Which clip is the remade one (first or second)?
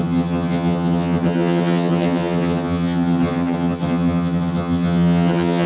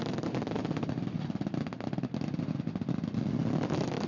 first